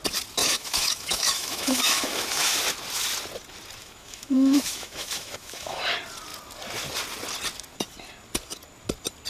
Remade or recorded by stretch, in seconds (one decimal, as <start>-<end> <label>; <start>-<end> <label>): 0.0-0.4 recorded; 0.4-2.6 remade; 2.6-3.8 recorded; 3.8-5.8 remade; 5.8-9.3 recorded